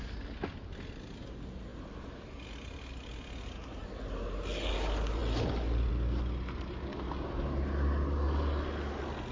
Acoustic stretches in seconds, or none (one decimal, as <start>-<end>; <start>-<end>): 0.0-9.3